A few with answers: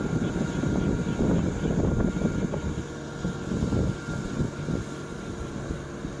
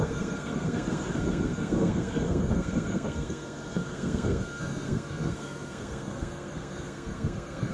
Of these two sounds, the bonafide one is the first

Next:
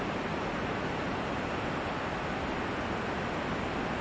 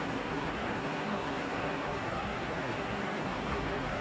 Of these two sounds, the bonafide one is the first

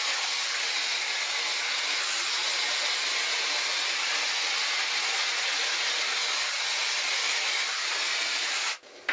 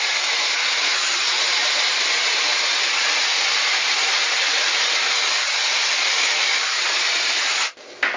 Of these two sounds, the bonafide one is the first